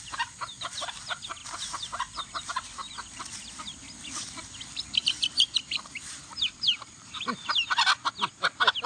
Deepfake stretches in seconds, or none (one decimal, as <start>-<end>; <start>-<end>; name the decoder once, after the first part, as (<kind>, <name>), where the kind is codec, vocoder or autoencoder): 5.0-7.7 (vocoder, BigVGAN v2)

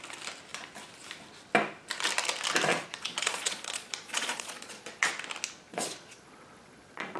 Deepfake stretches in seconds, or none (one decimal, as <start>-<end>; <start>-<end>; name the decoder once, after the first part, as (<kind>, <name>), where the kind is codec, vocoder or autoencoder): 2.7-5.1 (vocoder, Vocos); 5.7-7.2

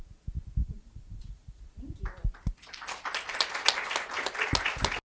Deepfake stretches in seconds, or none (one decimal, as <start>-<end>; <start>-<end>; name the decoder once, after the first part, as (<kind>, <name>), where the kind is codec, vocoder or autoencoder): 0.6-1.6 (vocoder, Vocos)

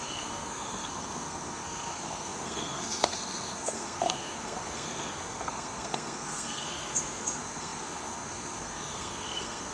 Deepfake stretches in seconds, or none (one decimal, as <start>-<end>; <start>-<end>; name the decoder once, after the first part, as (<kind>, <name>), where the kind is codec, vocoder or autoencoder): 0.0-9.7 (codec, SNAC)

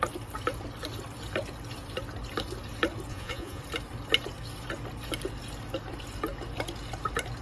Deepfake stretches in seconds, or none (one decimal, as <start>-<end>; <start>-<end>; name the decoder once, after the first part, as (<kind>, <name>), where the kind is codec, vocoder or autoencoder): 3.1-3.6 (vocoder, Vocos)

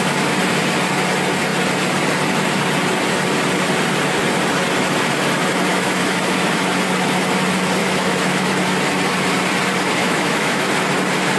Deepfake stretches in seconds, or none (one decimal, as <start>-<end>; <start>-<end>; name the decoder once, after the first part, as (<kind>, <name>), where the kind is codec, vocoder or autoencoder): 5.7-6.7 (autoencoder, DAC-VAE); 7.8-8.5; 10.0-10.7

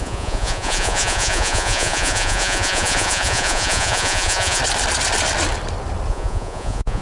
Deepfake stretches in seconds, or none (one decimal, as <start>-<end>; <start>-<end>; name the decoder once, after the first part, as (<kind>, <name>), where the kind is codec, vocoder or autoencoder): 0.0-4.6 (vocoder, Vocos); 6.1-7.0

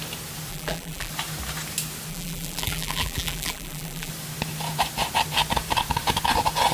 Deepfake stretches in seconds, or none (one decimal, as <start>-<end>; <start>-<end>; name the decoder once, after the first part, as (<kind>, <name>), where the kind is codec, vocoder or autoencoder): 0.5-1.1 (vocoder, BigVGAN v2); 2.1-4.1